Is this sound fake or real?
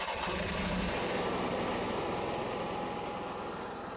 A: real